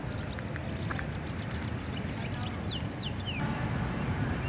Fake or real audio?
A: real